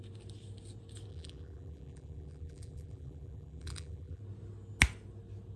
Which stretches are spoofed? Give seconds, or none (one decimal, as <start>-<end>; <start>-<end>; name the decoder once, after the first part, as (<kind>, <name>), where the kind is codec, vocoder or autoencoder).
1.1-4.2 (vocoder, BigVGAN v2)